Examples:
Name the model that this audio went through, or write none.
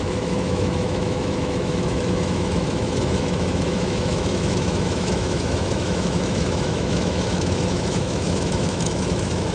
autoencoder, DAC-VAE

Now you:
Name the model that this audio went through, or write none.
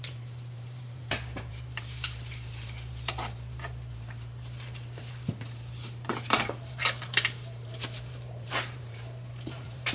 vocoder, BigVGAN v2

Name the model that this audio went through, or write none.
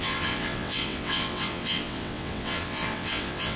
vocoder, WaveNeXt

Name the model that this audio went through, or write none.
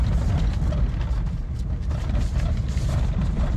none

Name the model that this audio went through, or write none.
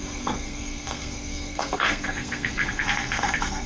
codec, SNAC